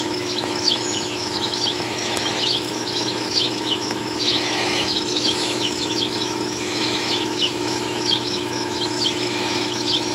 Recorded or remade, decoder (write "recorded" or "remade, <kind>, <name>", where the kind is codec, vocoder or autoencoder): remade, autoencoder, DAC-VAE